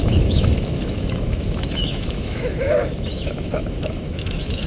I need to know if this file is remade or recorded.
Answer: remade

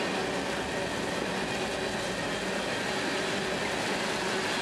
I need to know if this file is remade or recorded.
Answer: recorded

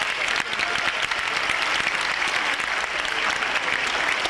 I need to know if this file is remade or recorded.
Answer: recorded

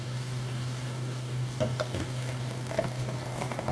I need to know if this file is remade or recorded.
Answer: remade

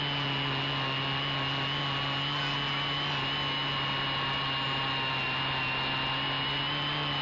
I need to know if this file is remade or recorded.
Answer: recorded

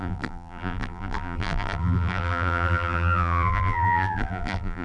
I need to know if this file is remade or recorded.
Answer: remade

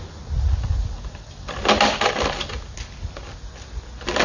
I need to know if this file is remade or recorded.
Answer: recorded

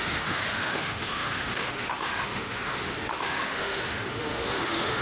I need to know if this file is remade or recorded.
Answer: remade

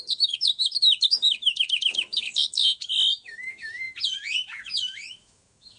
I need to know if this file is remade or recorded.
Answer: remade